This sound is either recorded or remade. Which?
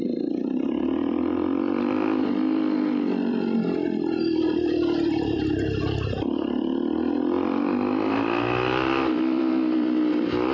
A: remade